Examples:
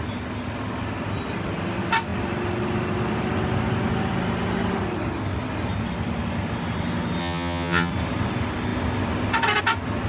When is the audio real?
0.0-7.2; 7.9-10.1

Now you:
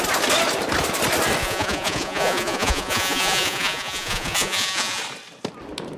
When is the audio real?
0.0-1.4; 5.0-6.0

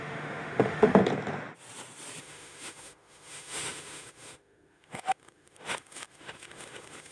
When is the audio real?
1.0-2.2

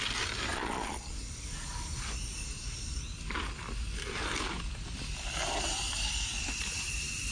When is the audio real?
0.0-0.5; 1.1-7.3

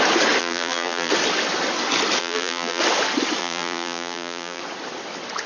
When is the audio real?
0.0-0.4; 1.1-2.2; 2.8-3.4; 4.6-5.5

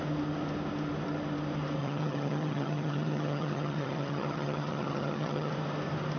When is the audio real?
0.0-1.8; 5.5-6.2

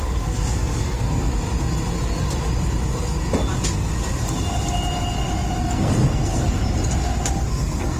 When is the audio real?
1.3-5.6; 6.6-7.5